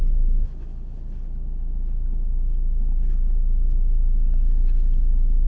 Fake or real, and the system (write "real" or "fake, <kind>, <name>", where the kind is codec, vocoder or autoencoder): real